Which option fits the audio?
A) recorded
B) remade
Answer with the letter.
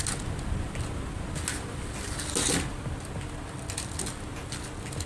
A